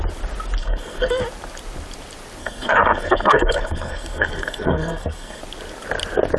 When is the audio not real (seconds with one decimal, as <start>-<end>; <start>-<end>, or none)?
0.6-1.2; 2.4-5.4